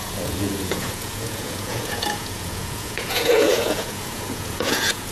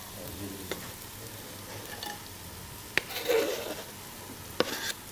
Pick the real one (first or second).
second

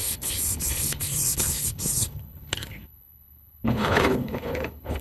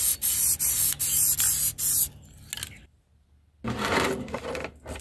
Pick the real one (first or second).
second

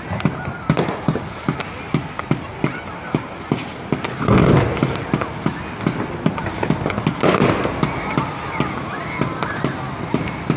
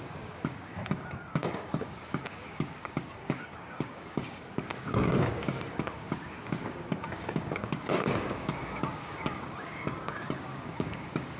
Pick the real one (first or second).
first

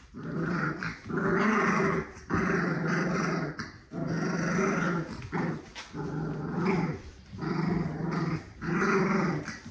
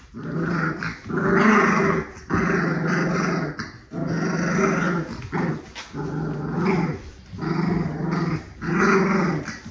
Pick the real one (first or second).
second